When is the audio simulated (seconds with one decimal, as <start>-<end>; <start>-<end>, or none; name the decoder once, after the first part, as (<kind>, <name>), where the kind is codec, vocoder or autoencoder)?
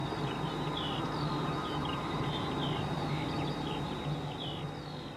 0.0-3.1 (vocoder, BigVGAN v2)